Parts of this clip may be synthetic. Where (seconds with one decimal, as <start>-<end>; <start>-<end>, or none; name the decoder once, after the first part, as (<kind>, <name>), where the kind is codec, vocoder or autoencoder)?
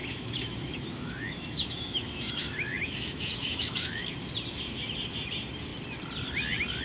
0.0-4.1 (autoencoder, DAC-VAE)